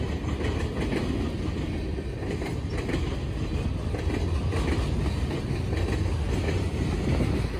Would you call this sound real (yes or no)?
yes